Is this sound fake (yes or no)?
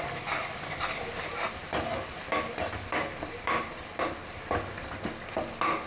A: no